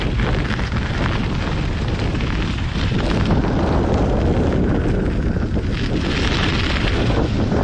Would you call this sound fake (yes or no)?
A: yes